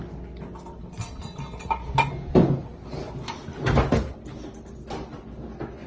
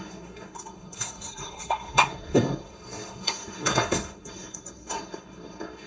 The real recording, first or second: first